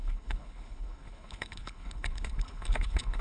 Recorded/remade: remade